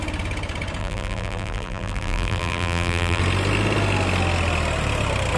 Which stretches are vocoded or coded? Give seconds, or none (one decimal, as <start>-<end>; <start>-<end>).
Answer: 0.8-3.2